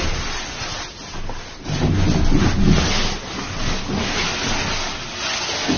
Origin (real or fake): real